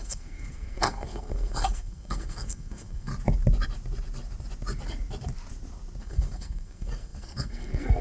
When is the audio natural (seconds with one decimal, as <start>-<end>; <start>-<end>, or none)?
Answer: 3.1-6.0